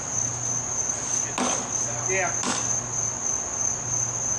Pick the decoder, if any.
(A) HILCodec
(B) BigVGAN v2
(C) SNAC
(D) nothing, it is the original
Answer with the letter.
D